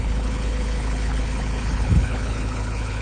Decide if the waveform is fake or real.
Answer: fake